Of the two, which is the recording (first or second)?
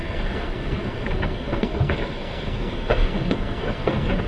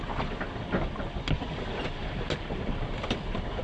second